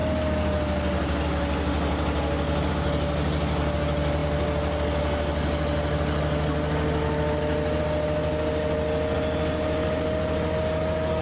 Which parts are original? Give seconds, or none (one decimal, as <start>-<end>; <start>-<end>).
0.0-11.2